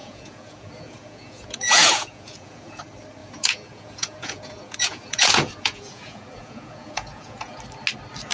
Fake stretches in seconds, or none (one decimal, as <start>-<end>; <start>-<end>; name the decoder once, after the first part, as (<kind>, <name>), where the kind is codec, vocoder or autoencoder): 0.0-2.8 (vocoder, Vocos); 3.2-7.6